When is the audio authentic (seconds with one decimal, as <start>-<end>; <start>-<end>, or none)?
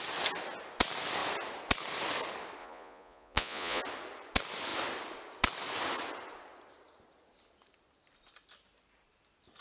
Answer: 0.0-2.6; 3.8-9.6